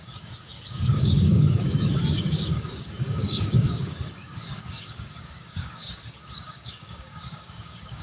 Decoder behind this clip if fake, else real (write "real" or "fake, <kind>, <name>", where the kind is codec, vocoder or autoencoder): fake, codec, DAC